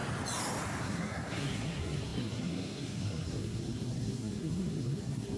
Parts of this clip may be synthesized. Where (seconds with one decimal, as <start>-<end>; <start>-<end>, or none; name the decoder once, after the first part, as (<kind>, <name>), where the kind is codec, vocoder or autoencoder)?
0.8-5.4 (codec, SNAC)